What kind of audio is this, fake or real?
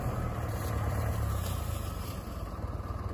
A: fake